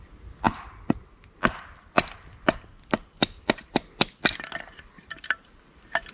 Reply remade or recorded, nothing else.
recorded